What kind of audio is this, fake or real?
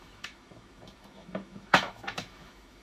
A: fake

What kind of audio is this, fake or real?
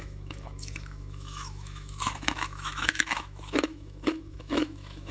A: fake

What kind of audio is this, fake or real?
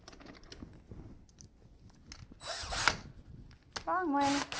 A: real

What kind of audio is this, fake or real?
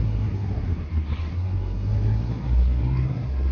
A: fake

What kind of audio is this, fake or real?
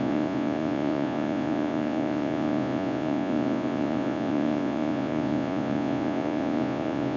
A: fake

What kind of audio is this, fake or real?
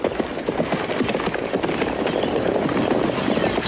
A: real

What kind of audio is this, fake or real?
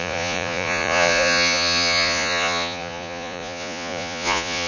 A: fake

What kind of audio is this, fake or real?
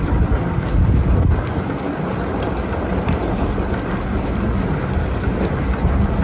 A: real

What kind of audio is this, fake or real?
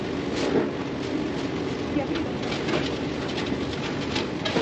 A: real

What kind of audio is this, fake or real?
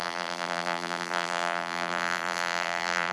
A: fake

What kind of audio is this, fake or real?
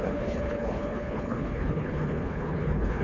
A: fake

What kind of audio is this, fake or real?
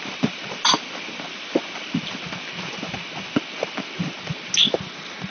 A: real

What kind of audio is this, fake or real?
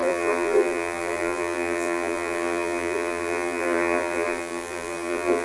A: fake